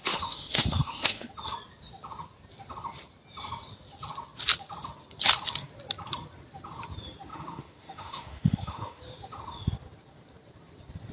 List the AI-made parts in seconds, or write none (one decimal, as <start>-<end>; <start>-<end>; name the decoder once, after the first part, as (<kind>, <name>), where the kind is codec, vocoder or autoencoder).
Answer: 0.0-1.3 (autoencoder, DAC-VAE); 7.3-9.0